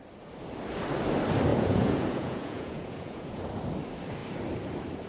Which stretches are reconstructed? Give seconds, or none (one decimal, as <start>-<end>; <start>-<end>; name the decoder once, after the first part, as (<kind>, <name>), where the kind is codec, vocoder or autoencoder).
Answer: 1.5-3.4 (vocoder, Vocos)